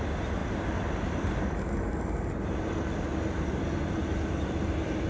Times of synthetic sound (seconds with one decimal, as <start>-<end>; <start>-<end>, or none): none